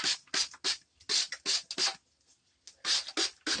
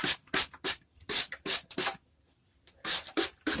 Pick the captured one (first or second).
first